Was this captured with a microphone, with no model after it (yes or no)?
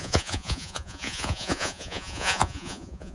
no